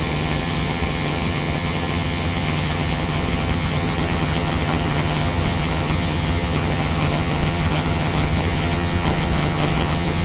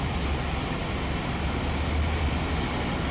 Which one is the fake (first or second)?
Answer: first